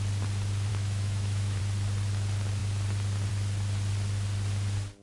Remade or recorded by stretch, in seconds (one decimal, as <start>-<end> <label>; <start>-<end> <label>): 0.0-0.7 recorded; 0.7-1.6 remade; 1.6-5.0 recorded